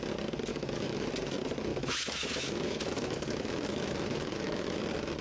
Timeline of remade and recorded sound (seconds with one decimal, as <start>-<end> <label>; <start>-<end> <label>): 0.0-0.5 recorded; 0.5-1.1 remade; 1.1-1.7 recorded; 1.7-4.8 remade; 4.8-5.2 recorded